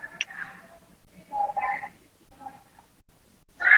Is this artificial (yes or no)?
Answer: no